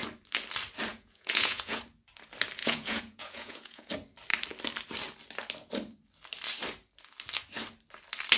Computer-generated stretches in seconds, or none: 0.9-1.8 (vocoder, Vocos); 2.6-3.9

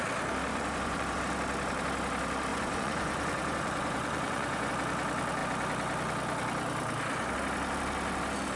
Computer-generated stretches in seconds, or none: 0.5-1.2 (vocoder, Vocos); 2.5-4.7

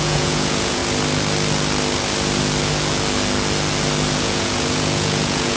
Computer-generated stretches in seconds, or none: 0.0-0.8 (vocoder, Vocos); 4.2-5.6

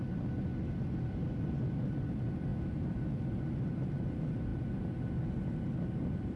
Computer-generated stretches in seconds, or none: none

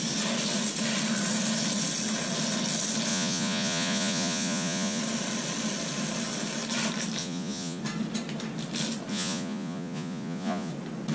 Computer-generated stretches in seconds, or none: 3.1-5.0 (vocoder, Vocos); 7.2-7.8; 9.1-10.7

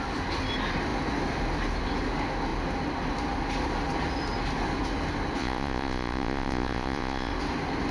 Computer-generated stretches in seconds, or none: 5.4-7.3 (vocoder, Vocos)